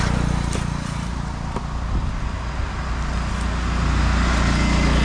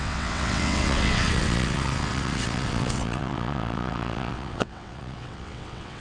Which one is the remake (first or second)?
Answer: second